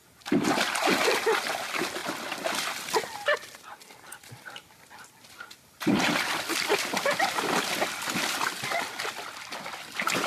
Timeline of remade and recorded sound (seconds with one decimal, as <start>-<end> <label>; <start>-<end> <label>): 0.0-10.3 recorded

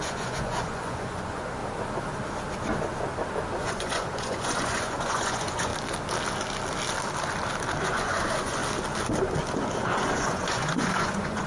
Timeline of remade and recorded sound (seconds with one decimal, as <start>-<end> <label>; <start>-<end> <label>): 0.0-1.6 remade; 1.6-3.6 recorded; 3.6-5.7 remade; 5.7-7.8 recorded; 7.8-8.6 remade; 8.6-9.8 recorded; 9.8-11.5 remade